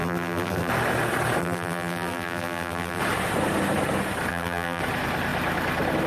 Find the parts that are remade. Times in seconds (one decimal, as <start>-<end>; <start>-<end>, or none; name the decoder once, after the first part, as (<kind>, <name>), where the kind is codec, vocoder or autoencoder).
0.0-0.7 (vocoder, BigVGAN v2); 1.4-3.0; 4.3-4.8